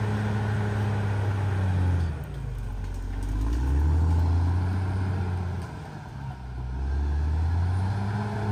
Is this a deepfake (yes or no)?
no